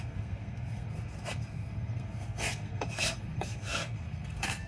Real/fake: fake